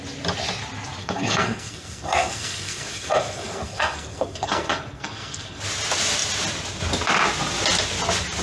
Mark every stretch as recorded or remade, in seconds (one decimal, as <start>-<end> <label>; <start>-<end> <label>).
0.0-1.0 recorded; 1.0-5.6 remade; 5.6-8.4 recorded